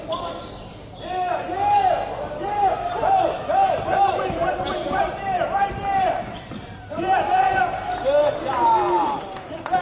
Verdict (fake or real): fake